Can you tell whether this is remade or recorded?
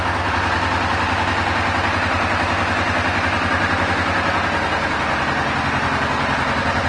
recorded